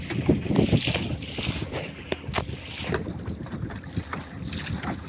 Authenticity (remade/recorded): remade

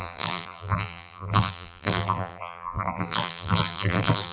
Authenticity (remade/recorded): remade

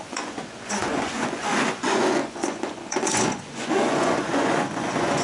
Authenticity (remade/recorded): remade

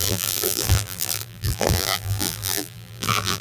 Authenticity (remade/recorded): remade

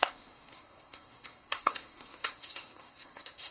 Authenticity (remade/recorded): remade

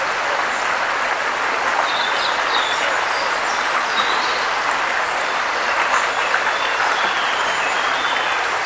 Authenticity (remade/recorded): recorded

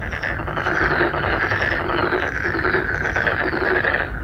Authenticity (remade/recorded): remade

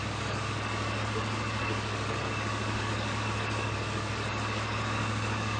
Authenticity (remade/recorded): remade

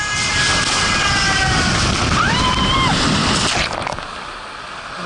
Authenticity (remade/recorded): recorded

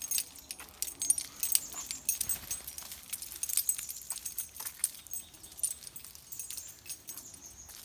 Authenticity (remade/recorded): recorded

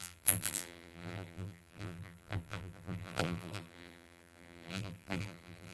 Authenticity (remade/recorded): remade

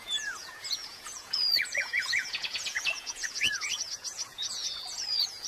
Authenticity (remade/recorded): remade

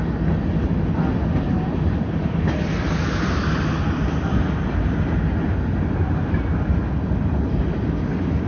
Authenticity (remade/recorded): recorded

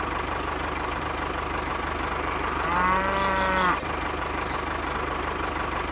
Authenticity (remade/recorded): recorded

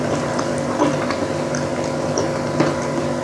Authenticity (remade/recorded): recorded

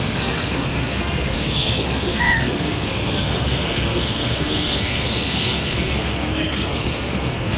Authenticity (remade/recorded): remade